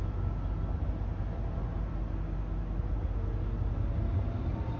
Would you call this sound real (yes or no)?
yes